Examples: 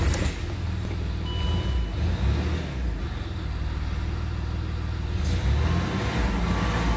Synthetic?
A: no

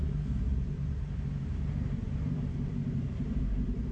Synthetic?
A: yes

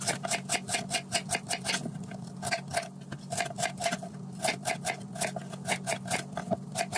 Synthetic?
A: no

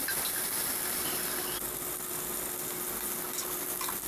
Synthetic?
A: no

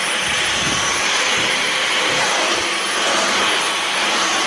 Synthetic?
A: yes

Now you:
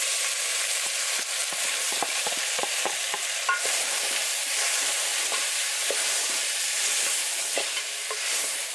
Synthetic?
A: yes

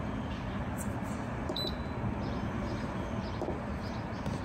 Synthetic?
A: no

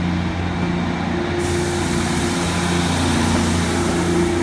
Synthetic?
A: no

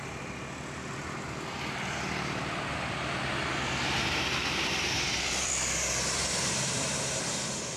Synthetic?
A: yes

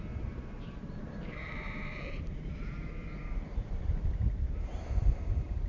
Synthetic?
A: yes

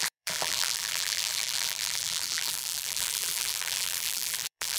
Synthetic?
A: yes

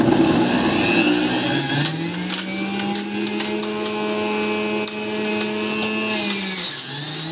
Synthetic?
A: no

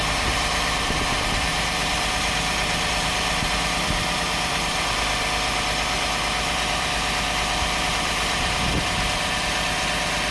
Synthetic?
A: yes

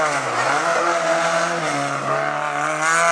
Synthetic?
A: no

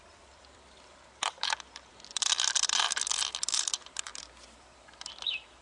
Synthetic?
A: yes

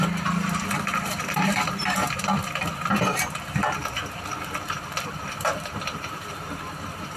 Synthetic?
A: yes